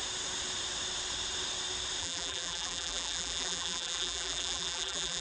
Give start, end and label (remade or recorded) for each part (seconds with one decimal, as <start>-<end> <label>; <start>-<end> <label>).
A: 0.0-2.0 recorded; 2.0-5.2 remade